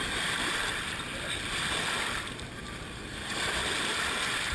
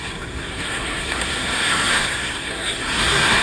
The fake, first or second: second